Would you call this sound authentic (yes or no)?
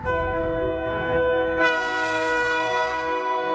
no